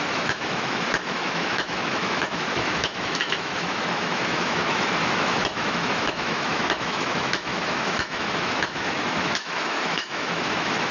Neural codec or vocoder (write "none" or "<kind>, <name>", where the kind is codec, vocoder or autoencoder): autoencoder, DAC-VAE